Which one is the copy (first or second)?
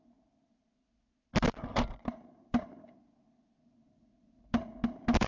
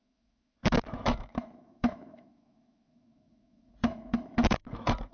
second